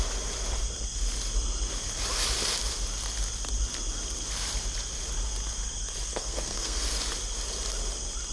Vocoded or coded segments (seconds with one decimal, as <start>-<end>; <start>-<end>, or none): 6.1-6.8